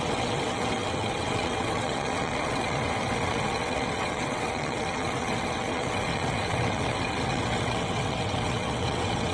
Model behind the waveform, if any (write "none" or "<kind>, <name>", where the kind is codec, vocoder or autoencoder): vocoder, WaveNeXt